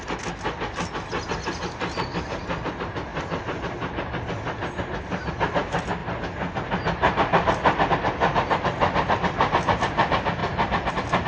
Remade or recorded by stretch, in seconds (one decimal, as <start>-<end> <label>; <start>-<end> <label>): 0.0-11.3 recorded